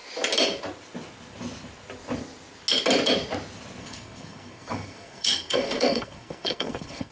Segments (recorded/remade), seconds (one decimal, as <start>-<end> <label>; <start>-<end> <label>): 0.0-3.8 recorded; 3.8-7.1 remade